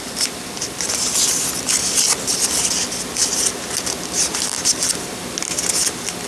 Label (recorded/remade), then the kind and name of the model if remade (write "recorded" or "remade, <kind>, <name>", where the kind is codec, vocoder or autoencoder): recorded